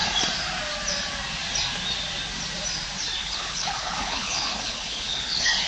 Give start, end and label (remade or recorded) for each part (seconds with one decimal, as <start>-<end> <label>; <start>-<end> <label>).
0.0-3.2 recorded; 3.2-5.7 remade